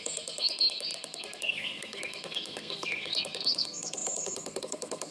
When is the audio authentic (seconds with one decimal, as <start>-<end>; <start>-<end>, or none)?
none